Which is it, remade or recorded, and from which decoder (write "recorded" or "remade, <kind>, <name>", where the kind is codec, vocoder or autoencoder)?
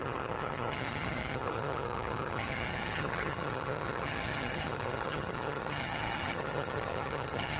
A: remade, vocoder, HiFi-GAN